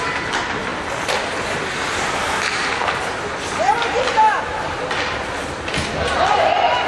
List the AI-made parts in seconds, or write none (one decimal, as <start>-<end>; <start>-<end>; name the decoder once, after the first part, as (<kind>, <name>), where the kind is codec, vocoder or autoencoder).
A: none